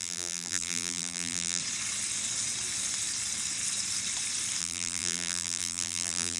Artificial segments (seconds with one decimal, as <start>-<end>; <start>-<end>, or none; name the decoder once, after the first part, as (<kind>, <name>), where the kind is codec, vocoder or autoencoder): 0.0-1.6 (vocoder, BigVGAN v2); 4.6-6.4